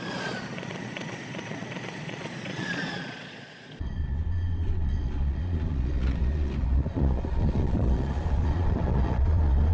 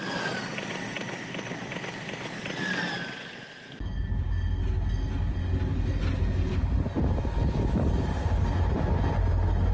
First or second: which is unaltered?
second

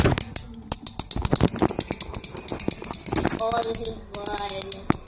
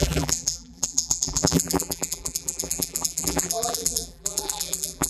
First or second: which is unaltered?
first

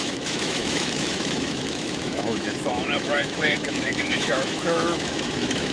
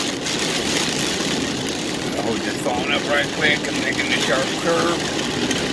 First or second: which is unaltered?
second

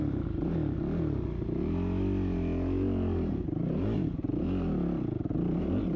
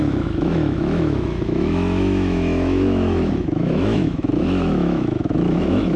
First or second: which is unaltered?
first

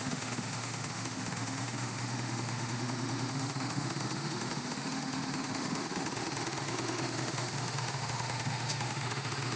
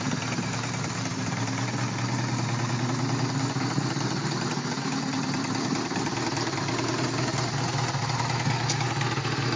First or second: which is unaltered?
second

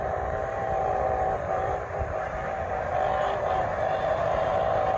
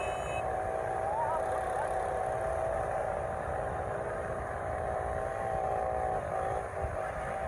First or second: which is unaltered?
second